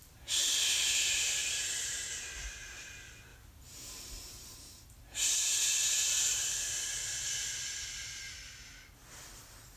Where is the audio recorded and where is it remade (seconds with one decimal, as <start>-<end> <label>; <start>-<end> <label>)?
0.0-2.3 remade; 2.3-3.3 recorded; 3.3-6.6 remade; 6.6-9.8 recorded